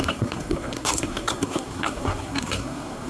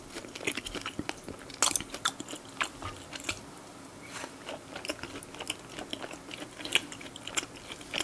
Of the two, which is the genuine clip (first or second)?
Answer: second